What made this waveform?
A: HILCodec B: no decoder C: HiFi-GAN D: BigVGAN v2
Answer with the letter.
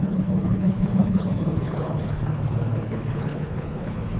A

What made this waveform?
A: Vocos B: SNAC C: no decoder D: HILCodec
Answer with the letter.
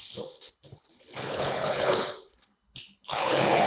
D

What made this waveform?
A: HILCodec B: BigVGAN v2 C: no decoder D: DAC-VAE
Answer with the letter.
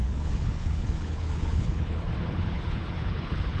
A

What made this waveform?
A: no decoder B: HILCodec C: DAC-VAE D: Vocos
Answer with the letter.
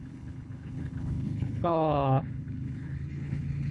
B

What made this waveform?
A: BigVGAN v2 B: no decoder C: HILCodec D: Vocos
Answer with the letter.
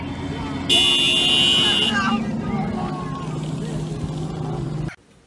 B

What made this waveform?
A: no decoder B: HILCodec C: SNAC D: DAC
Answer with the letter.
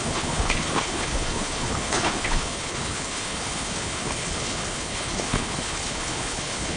B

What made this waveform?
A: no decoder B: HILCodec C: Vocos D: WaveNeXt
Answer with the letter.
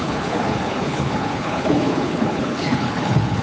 B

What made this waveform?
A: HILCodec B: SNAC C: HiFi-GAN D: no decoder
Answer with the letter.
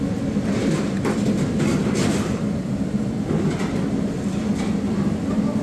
D